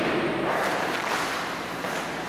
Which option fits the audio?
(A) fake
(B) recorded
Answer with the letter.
B